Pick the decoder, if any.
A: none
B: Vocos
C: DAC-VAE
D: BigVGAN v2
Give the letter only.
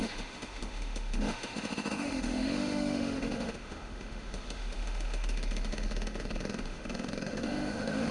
C